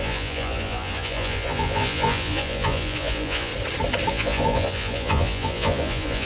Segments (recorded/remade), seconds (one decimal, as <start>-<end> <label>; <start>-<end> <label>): 0.0-3.5 remade; 3.5-4.1 recorded; 4.1-6.3 remade